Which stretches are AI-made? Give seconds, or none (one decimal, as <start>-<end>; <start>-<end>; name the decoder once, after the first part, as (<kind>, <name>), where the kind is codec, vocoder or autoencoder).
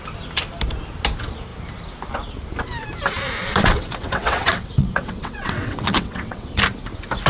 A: 3.4-6.6 (vocoder, WaveNeXt)